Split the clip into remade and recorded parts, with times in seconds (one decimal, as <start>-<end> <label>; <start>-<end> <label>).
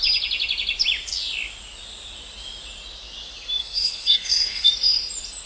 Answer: 0.0-3.6 recorded; 3.6-4.7 remade; 4.7-5.5 recorded